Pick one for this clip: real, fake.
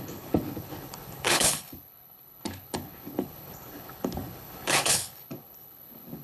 fake